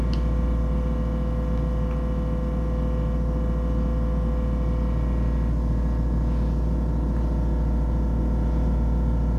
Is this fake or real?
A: real